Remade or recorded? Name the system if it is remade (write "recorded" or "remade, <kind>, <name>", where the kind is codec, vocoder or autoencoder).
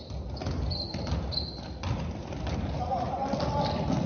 recorded